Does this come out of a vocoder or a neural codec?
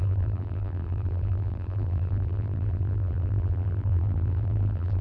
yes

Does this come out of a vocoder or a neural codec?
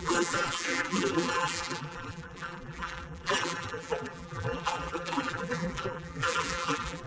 yes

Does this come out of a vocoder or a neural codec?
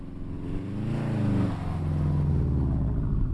no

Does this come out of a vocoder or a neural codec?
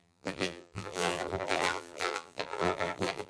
yes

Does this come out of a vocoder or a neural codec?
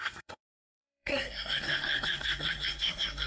yes